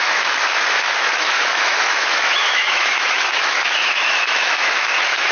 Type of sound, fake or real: fake